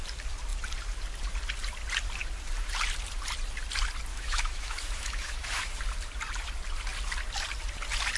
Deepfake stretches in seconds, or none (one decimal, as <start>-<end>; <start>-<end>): 4.1-5.8